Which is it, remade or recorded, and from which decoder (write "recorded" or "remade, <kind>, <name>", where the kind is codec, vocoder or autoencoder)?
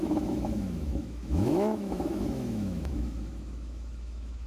remade, autoencoder, DAC-VAE